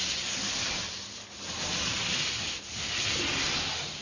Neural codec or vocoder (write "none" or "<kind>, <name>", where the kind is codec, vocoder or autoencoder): none